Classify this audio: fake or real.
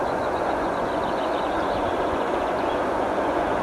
fake